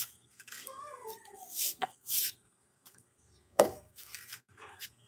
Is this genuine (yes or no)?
no